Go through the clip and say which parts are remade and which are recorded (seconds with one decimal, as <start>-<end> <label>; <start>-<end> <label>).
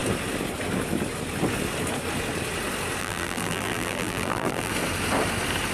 0.0-3.0 recorded; 3.0-4.7 remade; 4.7-5.7 recorded